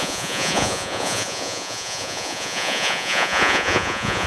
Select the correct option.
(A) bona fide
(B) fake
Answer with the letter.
B